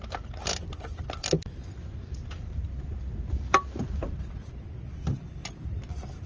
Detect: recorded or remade recorded